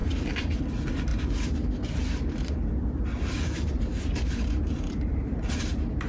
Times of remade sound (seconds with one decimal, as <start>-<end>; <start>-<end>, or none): 0.0-0.6; 3.1-6.1